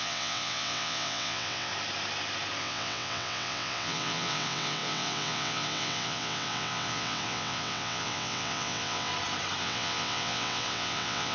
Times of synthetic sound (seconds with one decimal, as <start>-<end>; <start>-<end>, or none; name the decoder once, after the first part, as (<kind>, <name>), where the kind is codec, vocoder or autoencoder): 0.0-1.7 (vocoder, WaveNeXt); 2.6-9.1; 9.6-11.3